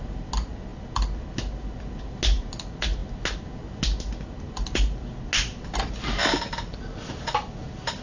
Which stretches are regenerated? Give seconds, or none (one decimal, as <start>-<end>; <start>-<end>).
none